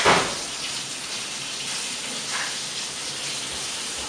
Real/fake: real